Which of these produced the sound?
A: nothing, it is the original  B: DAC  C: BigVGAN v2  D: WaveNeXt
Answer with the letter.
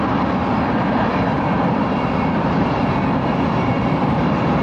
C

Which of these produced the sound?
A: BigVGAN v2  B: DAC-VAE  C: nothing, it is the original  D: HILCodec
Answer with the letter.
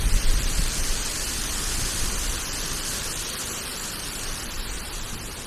A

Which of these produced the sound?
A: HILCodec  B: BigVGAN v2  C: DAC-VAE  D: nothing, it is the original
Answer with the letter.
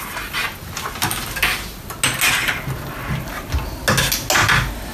D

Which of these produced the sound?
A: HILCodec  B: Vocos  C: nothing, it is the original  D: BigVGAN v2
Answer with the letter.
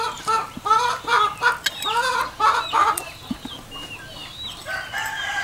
C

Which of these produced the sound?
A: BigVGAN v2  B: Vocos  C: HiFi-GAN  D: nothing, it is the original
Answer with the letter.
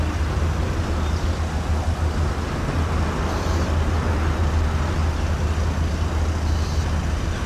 D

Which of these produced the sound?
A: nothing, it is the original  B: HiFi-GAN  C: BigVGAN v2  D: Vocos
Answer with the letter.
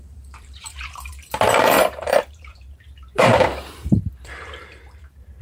C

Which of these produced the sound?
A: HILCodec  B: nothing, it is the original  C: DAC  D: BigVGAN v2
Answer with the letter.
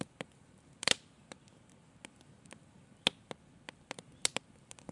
B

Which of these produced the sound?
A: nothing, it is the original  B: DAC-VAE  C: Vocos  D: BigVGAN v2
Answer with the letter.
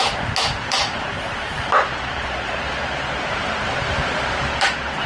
D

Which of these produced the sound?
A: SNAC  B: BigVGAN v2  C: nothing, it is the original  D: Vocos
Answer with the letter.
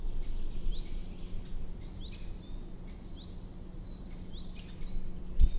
C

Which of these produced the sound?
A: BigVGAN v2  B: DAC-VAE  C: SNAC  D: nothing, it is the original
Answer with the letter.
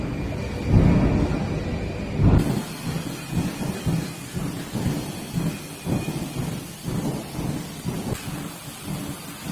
D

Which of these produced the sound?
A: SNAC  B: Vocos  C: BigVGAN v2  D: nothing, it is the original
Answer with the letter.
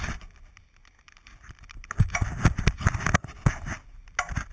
D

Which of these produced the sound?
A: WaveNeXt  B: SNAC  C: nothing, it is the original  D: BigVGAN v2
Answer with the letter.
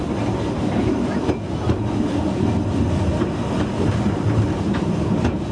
C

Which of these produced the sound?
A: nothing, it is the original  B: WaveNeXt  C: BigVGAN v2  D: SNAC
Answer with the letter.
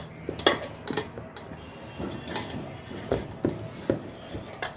A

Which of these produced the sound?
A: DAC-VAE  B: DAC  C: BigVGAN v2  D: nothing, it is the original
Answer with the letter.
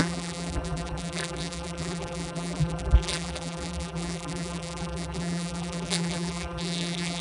C